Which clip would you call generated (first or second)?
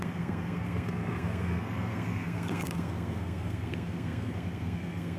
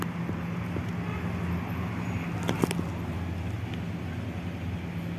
first